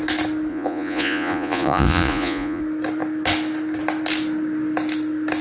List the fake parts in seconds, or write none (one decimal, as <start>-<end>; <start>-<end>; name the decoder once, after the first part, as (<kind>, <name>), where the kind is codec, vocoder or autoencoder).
0.5-2.6 (vocoder, Vocos)